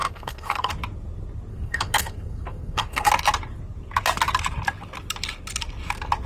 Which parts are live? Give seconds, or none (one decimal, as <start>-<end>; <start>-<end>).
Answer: 0.7-1.5; 3.1-6.3